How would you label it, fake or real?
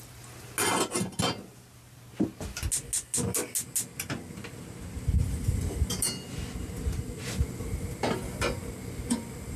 real